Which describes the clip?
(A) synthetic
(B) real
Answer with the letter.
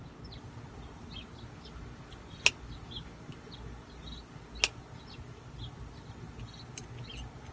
B